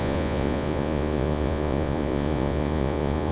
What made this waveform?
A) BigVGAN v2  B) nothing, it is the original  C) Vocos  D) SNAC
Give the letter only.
C